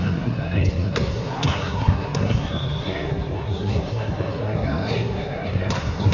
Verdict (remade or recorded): remade